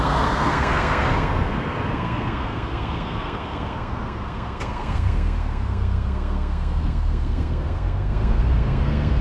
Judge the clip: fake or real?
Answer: fake